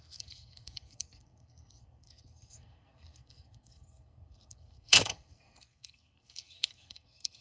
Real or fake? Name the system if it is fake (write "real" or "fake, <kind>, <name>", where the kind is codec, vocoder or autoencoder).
fake, codec, SNAC